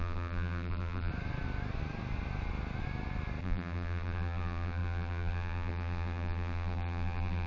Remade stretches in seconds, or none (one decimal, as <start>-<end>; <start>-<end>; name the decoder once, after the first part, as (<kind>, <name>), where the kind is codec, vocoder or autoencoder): 0.0-1.1 (vocoder, BigVGAN v2); 3.4-7.5